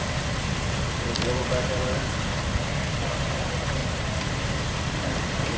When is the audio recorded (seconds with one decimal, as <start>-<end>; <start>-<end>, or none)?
0.0-3.8; 4.4-5.6